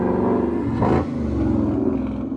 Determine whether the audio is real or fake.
real